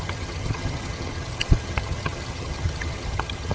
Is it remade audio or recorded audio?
remade